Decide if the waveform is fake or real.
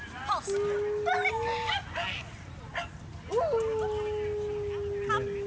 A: real